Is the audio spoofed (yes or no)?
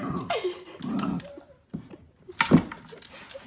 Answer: no